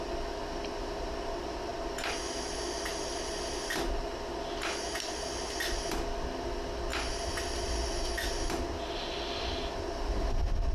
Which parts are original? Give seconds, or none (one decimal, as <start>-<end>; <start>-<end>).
0.0-10.7